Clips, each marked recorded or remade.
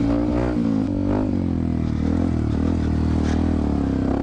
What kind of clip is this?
recorded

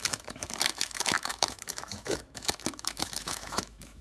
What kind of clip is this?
remade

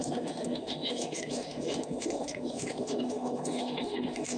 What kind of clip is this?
remade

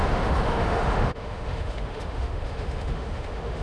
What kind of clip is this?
remade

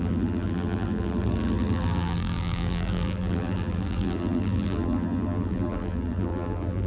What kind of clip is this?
remade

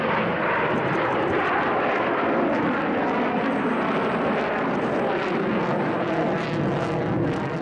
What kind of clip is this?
recorded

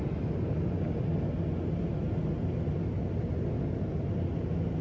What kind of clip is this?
recorded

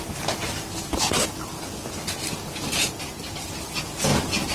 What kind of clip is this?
recorded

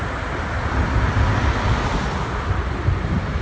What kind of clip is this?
recorded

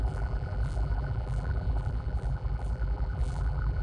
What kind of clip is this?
remade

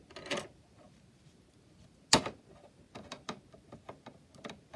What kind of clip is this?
recorded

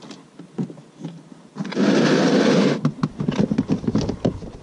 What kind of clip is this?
recorded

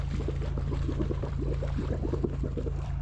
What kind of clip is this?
remade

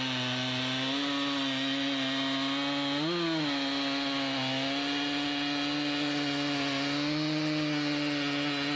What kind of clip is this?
recorded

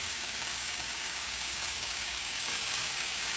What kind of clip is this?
remade